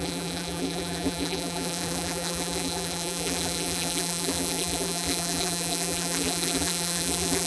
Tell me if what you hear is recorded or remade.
remade